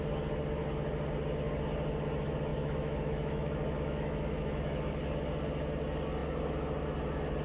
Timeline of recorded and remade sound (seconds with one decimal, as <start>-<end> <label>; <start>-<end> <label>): 0.0-2.5 recorded; 2.5-4.9 remade; 4.9-7.4 recorded